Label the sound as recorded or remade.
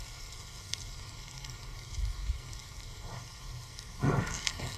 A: remade